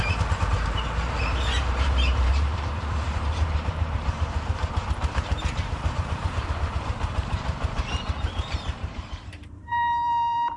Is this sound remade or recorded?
remade